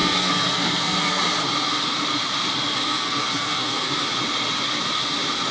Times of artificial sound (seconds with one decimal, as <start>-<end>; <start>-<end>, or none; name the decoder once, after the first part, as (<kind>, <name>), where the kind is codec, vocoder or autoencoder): 0.0-1.2 (codec, SNAC); 2.7-4.0